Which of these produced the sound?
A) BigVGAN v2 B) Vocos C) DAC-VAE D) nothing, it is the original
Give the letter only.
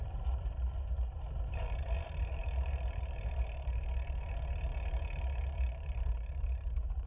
A